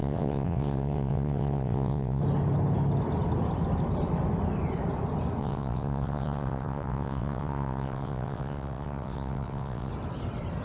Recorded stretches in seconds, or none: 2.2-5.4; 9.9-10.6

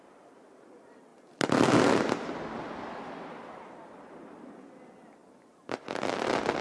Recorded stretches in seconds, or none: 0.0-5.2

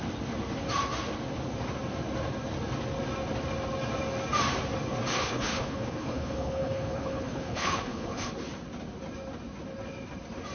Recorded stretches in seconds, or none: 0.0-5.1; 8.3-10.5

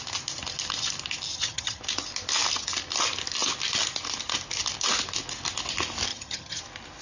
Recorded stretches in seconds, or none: 0.0-1.3; 1.8-6.1; 6.6-7.0

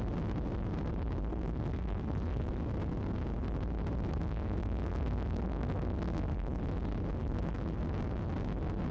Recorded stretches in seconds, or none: 0.0-1.3; 2.5-4.1; 6.6-7.2; 7.8-8.9

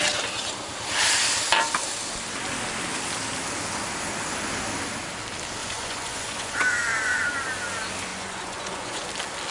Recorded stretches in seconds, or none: 0.0-5.6; 7.4-8.1; 9.1-9.5

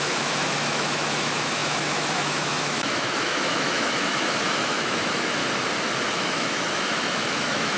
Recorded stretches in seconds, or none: 5.4-6.1

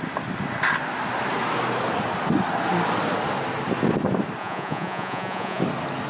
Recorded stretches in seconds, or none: 0.0-4.4; 5.6-6.1